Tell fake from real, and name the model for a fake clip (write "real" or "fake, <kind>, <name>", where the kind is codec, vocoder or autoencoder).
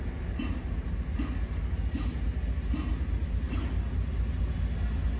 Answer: real